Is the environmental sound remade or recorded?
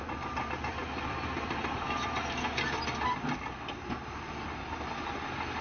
recorded